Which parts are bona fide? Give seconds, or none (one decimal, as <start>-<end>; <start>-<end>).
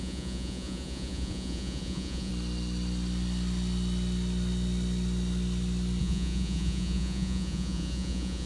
2.3-6.0